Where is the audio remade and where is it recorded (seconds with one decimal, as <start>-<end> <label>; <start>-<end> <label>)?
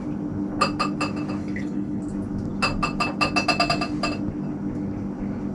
0.0-1.4 recorded; 1.4-2.0 remade; 2.0-5.5 recorded